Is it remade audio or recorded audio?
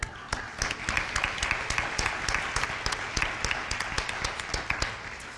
recorded